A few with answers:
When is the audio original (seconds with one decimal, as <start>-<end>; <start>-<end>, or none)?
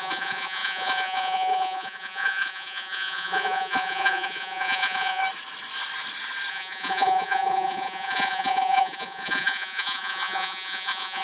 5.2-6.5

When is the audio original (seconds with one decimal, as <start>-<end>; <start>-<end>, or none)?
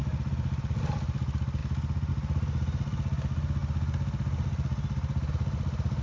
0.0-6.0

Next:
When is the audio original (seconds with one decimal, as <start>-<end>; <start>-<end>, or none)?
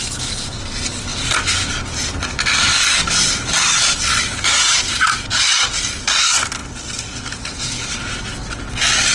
0.0-1.1; 5.2-6.6; 8.0-9.1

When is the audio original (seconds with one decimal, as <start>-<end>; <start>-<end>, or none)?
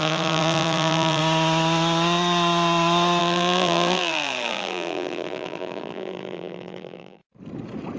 1.2-3.2; 7.2-8.0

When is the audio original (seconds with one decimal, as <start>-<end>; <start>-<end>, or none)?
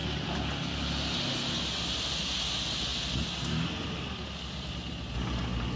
0.0-5.8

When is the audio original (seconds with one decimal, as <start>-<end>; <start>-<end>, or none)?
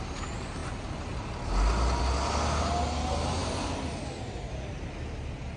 0.0-5.6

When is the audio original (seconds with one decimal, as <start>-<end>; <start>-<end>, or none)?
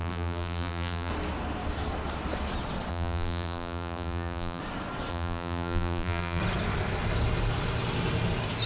1.1-2.9; 4.6-5.1; 6.4-8.7